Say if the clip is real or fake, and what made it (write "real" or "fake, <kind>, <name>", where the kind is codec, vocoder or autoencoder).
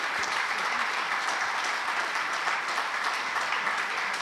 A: fake, vocoder, BigVGAN v2